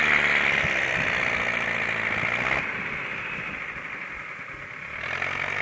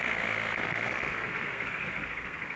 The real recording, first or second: first